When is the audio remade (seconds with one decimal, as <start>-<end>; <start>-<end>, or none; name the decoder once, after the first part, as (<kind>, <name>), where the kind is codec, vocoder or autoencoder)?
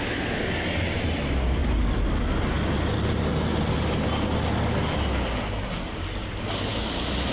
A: 1.6-4.1 (vocoder, BigVGAN v2)